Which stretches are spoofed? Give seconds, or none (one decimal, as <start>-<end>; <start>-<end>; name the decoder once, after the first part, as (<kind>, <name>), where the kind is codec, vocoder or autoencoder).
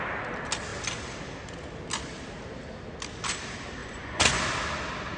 3.8-4.4 (vocoder, Vocos)